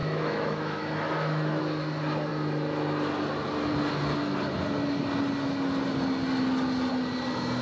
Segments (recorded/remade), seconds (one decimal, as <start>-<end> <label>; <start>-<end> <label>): 0.0-1.6 remade; 1.6-7.6 recorded